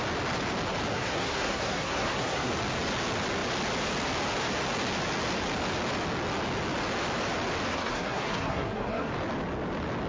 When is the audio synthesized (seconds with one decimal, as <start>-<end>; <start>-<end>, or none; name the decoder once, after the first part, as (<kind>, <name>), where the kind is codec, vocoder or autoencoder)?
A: 0.9-2.5 (codec, SNAC); 7.7-9.1